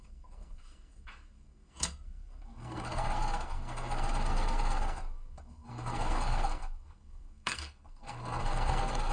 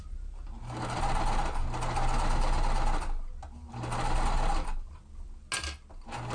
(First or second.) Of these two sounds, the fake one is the first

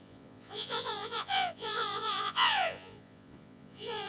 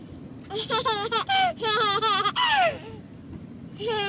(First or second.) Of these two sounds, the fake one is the first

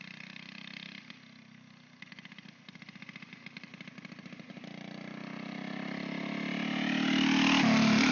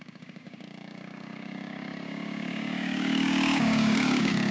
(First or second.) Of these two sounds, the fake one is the second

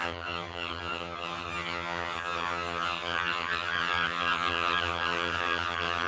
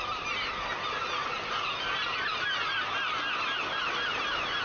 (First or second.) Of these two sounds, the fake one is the first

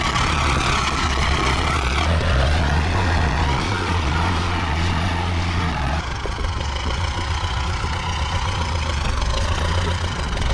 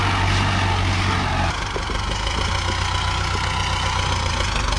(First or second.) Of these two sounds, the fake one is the first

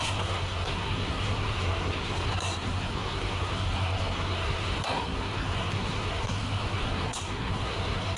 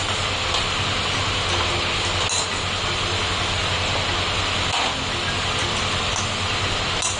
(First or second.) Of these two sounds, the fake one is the first